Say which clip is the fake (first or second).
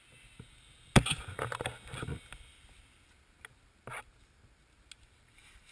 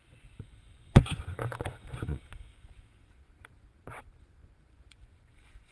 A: second